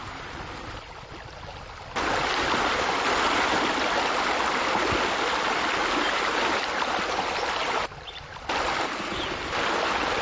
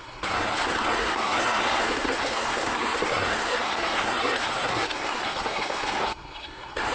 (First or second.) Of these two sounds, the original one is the first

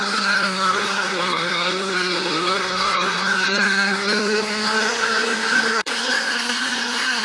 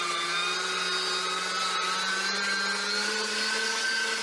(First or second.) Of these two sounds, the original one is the second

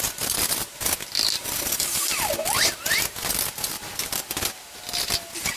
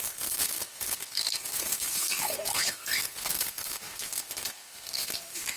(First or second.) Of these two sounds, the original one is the first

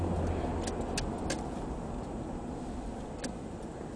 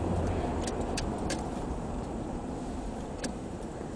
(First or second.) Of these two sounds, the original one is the first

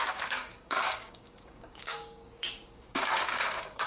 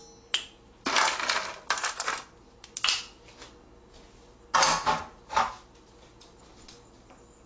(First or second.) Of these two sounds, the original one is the second